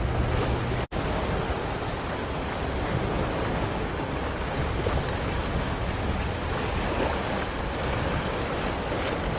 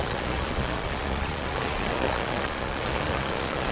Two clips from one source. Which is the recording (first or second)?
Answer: first